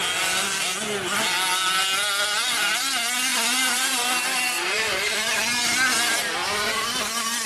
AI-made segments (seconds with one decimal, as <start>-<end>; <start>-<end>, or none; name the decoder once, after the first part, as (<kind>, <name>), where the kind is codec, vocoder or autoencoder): 3.3-5.6 (vocoder, BigVGAN v2)